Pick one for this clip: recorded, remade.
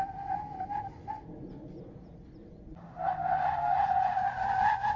recorded